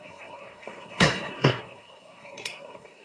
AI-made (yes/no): yes